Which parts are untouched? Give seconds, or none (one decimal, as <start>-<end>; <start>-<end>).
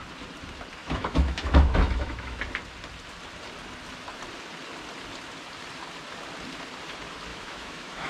0.0-0.8; 2.4-7.3